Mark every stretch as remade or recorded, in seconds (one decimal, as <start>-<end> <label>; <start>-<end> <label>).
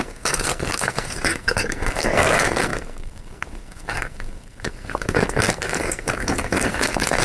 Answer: 0.0-7.2 remade